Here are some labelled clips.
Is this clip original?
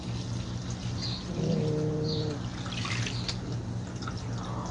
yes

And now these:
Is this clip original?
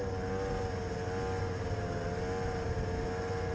yes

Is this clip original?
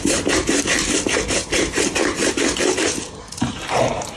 no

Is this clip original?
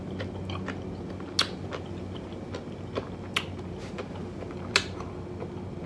yes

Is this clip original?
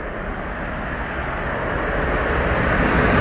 yes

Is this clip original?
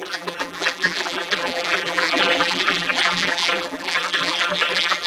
no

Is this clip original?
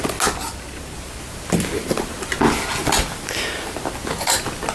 yes